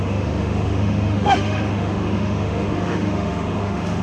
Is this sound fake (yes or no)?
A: yes